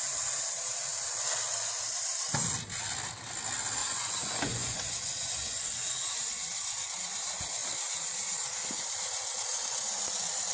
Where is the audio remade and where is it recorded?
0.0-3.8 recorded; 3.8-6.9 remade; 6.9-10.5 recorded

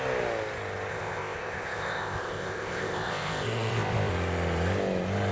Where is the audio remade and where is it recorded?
0.0-0.9 recorded; 0.9-4.1 remade; 4.1-5.3 recorded

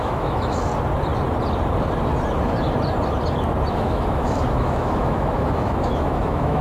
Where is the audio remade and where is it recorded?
0.0-0.7 remade; 0.7-3.7 recorded; 3.7-6.6 remade

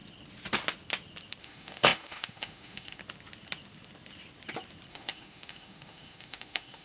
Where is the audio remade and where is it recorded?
0.0-1.4 recorded; 1.4-3.0 remade; 3.0-4.9 recorded; 4.9-6.8 remade